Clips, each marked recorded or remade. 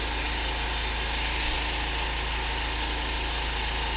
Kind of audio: recorded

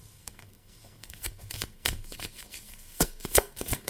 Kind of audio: remade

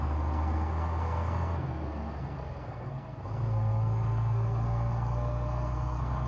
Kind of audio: remade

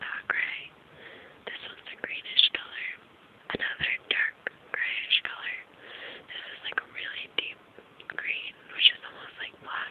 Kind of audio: recorded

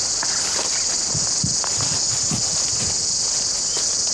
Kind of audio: recorded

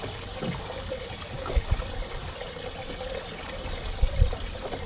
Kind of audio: recorded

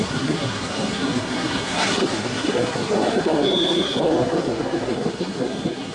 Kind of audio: remade